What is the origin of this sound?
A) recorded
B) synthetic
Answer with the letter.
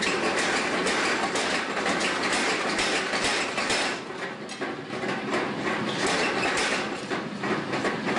A